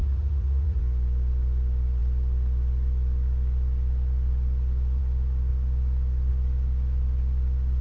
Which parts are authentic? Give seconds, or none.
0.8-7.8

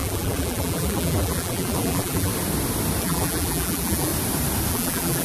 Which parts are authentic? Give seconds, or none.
2.3-3.0; 4.1-4.7